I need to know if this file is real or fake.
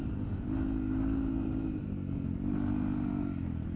real